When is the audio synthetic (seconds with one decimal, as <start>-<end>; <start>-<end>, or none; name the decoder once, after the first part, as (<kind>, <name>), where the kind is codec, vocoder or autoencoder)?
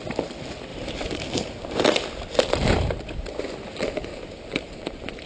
0.7-1.9 (vocoder, BigVGAN v2); 4.1-5.3